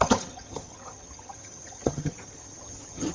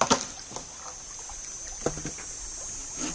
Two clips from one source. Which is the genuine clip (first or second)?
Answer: second